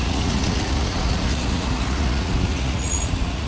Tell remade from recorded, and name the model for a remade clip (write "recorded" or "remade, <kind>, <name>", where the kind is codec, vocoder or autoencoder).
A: remade, vocoder, Vocos